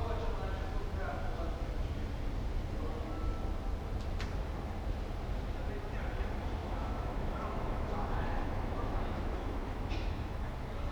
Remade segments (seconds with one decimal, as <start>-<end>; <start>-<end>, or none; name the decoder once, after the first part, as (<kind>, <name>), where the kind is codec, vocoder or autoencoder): 6.6-10.4 (autoencoder, DAC-VAE)